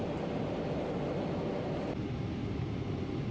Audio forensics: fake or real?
real